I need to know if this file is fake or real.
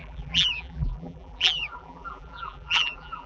fake